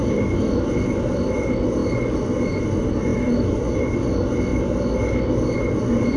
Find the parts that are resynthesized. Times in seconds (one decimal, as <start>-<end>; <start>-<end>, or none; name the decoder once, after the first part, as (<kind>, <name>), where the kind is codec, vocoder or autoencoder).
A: none